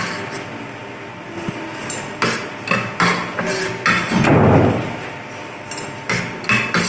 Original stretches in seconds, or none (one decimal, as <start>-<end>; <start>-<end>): 0.0-6.9